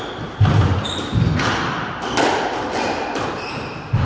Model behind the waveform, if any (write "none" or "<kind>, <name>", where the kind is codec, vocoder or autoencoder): none